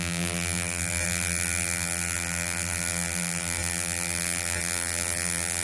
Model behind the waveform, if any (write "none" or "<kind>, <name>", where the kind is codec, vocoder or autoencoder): vocoder, BigVGAN v2